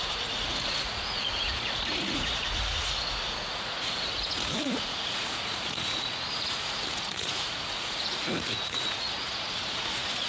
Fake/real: fake